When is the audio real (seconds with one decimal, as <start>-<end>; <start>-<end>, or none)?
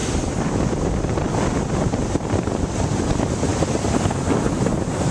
0.0-5.1